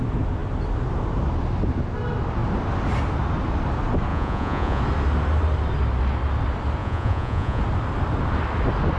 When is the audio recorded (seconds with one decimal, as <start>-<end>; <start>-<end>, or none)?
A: 0.0-4.1; 4.8-6.8; 7.6-9.0

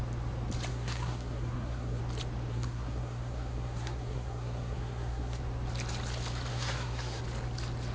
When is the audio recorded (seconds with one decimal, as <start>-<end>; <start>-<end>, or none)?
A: 0.0-0.7; 2.0-2.5; 5.4-6.5; 7.2-7.9

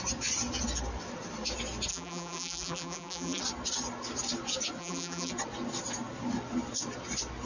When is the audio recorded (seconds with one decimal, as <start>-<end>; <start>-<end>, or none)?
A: 0.0-1.9; 3.4-4.8; 5.3-7.5

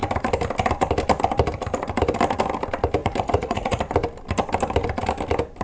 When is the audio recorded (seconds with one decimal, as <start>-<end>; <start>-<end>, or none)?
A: 0.0-3.0; 3.8-5.6

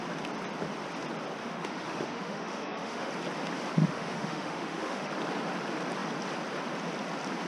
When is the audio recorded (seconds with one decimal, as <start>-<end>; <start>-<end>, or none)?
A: 0.0-1.4; 3.1-3.8; 5.1-7.5

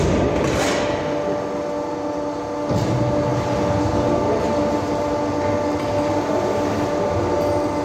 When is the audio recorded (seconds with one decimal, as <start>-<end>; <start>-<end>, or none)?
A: 0.0-7.8